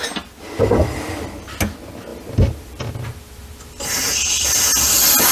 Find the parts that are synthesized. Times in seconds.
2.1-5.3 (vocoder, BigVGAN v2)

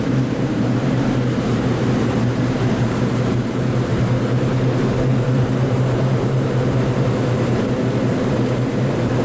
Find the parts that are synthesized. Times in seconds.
0.0-9.2 (vocoder, BigVGAN v2)

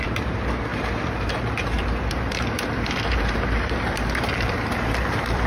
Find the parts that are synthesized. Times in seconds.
0.0-5.5 (vocoder, BigVGAN v2)

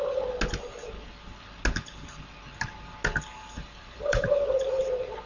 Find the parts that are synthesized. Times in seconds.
3.6-4.4 (vocoder, BigVGAN v2)

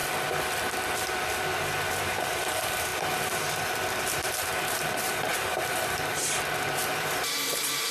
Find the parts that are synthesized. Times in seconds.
1.9-7.9 (vocoder, BigVGAN v2)

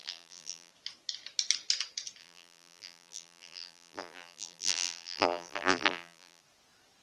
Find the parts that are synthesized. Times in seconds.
0.0-0.7 (vocoder, BigVGAN v2); 2.2-6.4

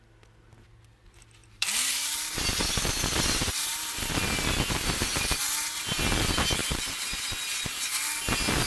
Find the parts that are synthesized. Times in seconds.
1.4-4.0 (vocoder, BigVGAN v2); 6.6-7.3